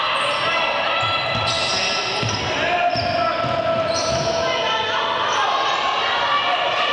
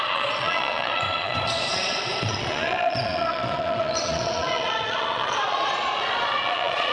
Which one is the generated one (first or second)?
second